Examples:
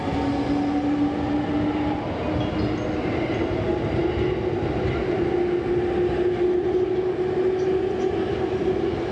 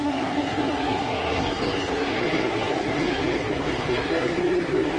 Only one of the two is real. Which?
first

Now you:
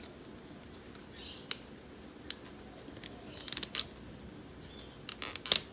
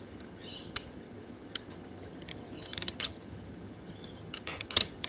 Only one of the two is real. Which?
first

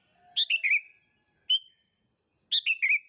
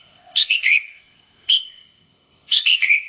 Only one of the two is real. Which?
first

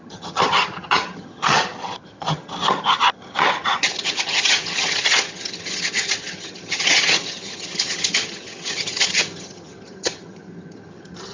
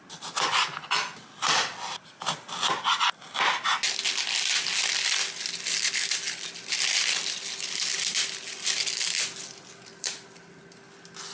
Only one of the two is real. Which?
second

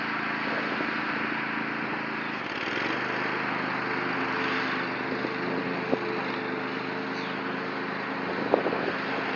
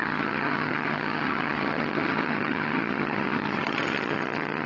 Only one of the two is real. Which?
first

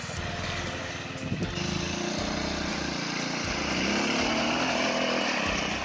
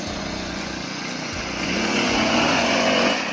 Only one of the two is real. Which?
first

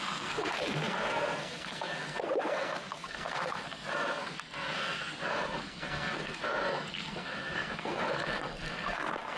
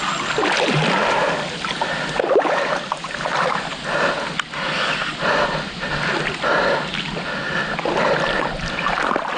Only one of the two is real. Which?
second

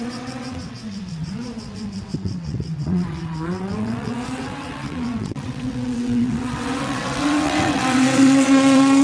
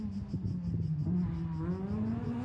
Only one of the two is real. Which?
second